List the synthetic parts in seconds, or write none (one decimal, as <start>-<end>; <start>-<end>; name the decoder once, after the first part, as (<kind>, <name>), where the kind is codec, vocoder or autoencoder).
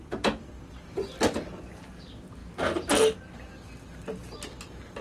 none